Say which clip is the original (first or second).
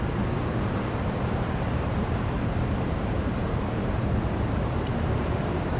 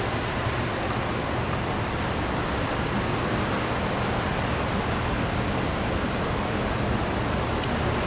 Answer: second